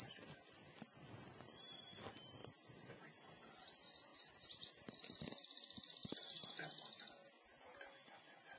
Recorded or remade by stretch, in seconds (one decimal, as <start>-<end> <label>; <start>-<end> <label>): 0.0-4.1 recorded; 4.1-4.9 remade; 4.9-8.6 recorded